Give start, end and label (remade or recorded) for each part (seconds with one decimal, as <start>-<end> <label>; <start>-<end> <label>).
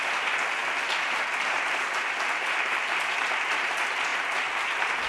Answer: 0.0-5.1 recorded